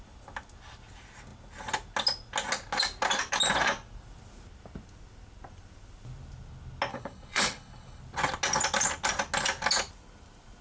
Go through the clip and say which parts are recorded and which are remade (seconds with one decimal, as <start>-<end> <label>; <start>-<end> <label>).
0.0-6.9 recorded; 6.9-8.0 remade; 8.0-10.6 recorded

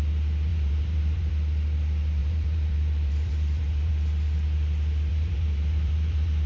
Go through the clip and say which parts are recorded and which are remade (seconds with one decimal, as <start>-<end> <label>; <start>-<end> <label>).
0.0-0.5 recorded; 0.5-1.3 remade; 1.3-2.2 recorded; 2.2-3.9 remade; 3.9-5.1 recorded; 5.1-6.5 remade

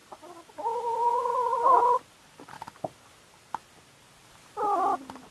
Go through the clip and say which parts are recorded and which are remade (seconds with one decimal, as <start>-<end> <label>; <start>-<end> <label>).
0.0-3.2 remade; 3.2-5.3 recorded